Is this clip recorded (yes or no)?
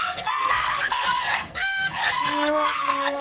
no